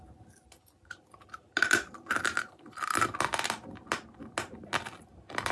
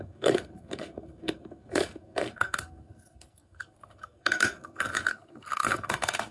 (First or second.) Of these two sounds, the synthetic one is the second